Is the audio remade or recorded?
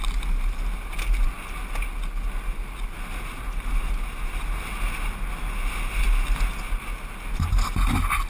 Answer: recorded